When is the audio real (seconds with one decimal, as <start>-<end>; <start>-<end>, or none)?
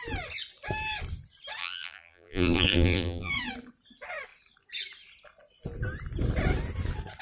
0.0-1.6; 3.3-7.2